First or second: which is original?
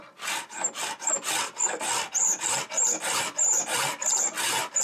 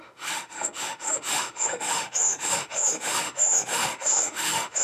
first